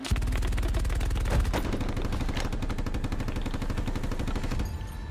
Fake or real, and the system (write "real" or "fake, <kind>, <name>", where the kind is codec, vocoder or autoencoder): real